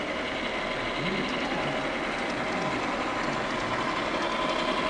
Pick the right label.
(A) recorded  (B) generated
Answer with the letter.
A